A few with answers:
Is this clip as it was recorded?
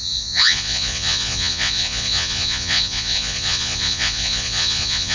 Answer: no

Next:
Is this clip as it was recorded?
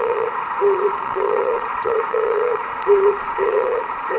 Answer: no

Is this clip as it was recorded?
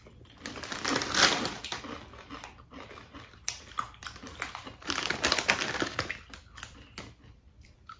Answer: yes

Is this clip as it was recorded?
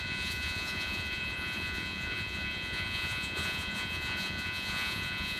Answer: no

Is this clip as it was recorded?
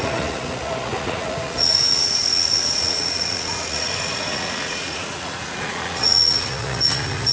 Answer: no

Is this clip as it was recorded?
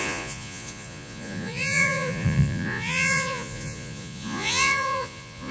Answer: no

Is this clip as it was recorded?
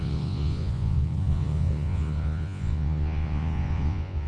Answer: no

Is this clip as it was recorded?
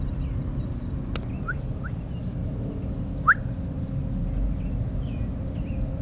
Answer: yes